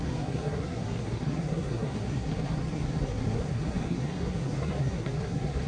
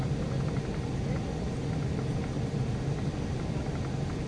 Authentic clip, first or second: second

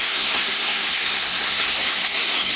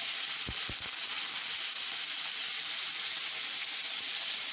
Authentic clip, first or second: second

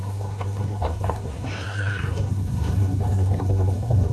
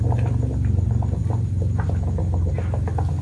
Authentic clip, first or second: second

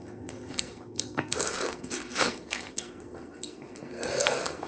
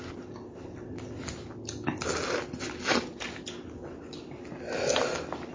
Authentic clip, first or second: second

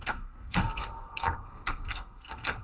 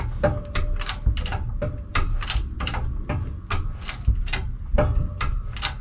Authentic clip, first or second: second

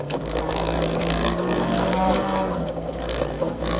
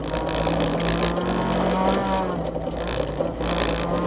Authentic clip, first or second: second